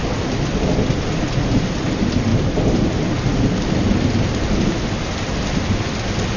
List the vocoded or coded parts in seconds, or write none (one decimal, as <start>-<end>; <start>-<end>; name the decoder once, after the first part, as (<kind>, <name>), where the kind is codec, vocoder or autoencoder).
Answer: none